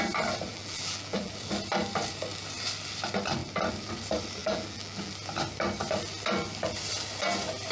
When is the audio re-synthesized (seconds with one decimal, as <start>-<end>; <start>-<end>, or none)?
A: 0.5-1.3; 4.4-5.1